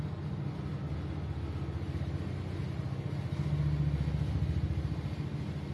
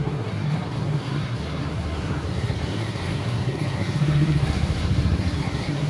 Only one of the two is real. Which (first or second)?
first